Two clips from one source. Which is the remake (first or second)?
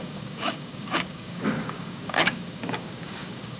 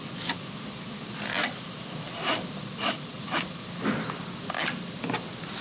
first